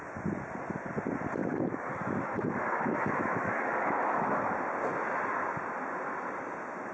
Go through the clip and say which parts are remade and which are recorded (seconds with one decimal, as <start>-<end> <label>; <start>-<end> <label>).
0.0-1.4 recorded; 1.4-4.4 remade; 4.4-6.9 recorded